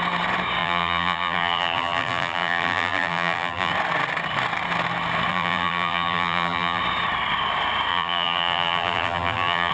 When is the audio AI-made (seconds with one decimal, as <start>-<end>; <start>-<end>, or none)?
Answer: 0.6-3.7; 5.3-6.8; 7.9-9.7